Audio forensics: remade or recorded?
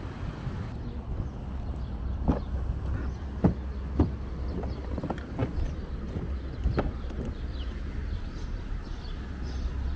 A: recorded